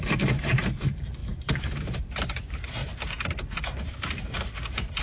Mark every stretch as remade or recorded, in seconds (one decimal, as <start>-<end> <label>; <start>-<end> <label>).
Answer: 0.0-5.0 remade